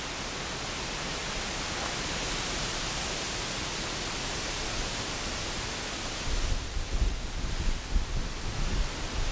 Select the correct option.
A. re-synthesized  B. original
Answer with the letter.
B